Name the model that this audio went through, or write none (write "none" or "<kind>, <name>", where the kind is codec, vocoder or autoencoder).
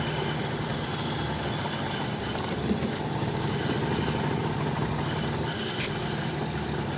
none